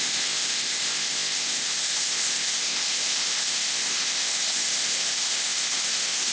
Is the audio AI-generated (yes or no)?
yes